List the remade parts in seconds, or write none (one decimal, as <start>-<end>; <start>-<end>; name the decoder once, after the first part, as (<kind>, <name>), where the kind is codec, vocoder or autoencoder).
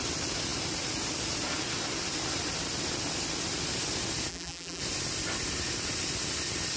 4.3-4.8 (vocoder, BigVGAN v2)